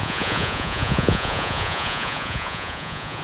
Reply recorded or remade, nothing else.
remade